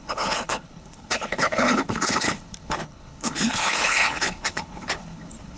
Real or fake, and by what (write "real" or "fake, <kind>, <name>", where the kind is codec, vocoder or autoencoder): fake, codec, HILCodec